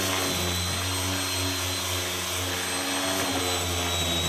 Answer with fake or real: real